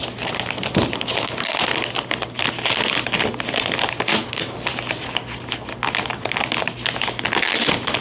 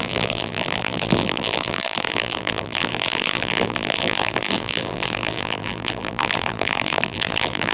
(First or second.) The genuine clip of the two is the first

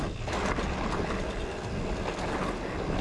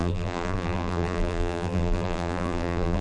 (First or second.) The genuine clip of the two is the first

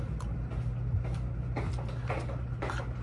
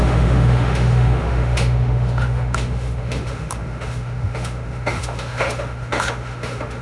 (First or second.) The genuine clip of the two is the first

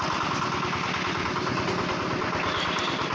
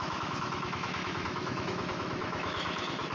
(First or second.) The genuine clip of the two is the first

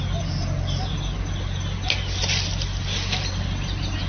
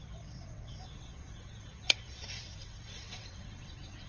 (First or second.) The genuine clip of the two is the first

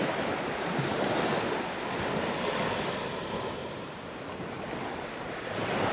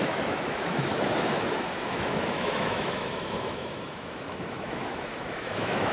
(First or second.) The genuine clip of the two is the first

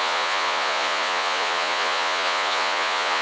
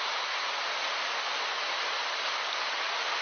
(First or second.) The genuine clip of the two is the second